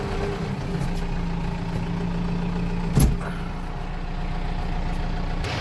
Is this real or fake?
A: real